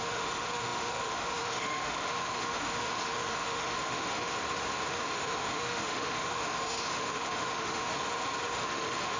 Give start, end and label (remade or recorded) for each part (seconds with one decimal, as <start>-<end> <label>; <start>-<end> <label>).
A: 0.0-4.3 remade; 4.3-5.0 recorded; 5.0-7.9 remade; 7.9-8.5 recorded; 8.5-9.2 remade